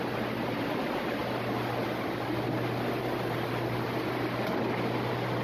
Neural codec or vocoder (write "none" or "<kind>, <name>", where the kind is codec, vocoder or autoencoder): none